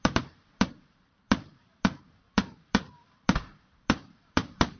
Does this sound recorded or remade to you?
remade